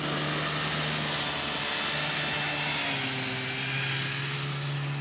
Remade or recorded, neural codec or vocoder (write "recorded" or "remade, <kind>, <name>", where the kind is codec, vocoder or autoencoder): recorded